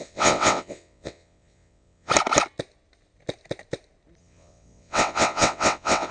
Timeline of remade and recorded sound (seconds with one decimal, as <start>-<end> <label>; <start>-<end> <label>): 0.0-2.1 remade; 2.1-4.2 recorded; 4.2-6.1 remade

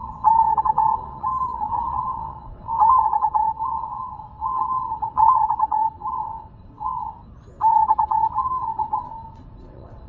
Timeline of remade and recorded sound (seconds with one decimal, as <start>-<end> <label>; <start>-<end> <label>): 0.0-7.1 remade; 7.1-7.7 recorded; 7.7-10.1 remade

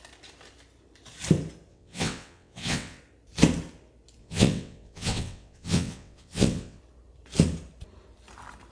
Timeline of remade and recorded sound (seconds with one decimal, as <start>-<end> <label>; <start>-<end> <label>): 0.0-1.7 recorded; 1.7-3.0 remade; 3.0-4.2 recorded; 4.2-6.8 remade; 6.8-8.7 recorded

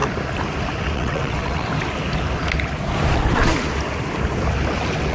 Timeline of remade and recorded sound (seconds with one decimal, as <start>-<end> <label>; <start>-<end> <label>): 0.0-0.8 recorded; 0.8-1.7 remade; 1.7-5.1 recorded

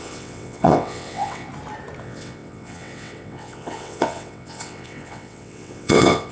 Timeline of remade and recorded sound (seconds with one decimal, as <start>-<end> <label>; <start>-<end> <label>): 0.0-1.5 remade; 1.5-2.0 recorded; 2.0-6.3 remade

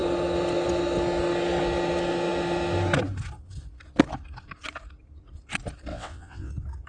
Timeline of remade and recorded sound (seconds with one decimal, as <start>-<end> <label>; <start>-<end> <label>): 0.0-5.9 recorded; 5.9-6.5 remade; 6.5-6.9 recorded

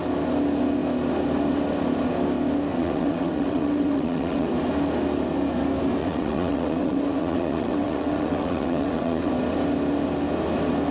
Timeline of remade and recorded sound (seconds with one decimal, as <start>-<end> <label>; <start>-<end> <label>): 0.0-2.7 recorded; 2.7-4.5 remade; 4.5-6.0 recorded; 6.0-9.3 remade; 9.3-10.9 recorded